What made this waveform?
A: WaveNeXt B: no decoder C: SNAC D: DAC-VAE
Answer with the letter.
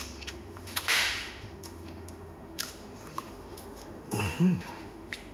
D